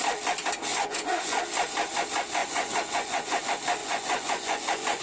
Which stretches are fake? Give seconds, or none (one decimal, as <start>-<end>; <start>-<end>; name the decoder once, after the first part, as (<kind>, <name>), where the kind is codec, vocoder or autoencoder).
0.7-1.4 (vocoder, Vocos); 2.4-3.4; 3.8-5.0